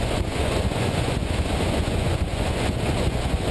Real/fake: fake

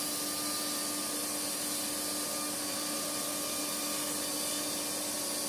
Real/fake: real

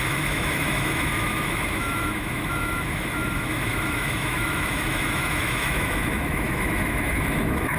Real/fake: fake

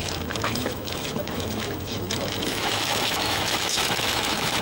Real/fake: fake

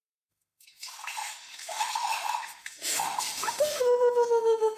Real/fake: fake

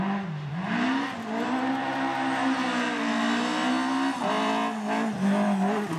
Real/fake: real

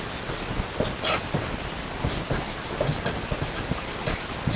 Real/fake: real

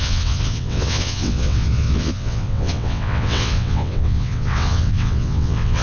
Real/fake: fake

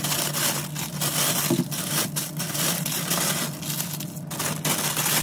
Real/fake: real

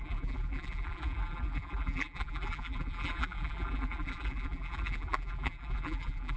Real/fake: fake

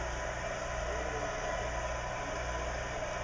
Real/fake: real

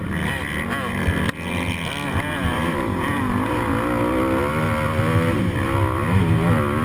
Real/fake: real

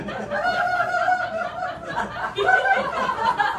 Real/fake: real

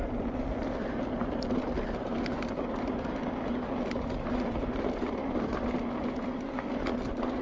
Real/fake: real